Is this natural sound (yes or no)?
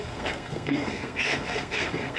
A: no